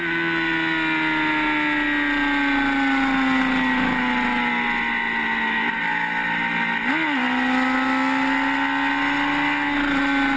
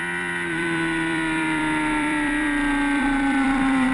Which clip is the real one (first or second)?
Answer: first